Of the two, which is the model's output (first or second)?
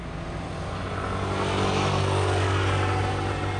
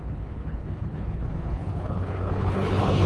second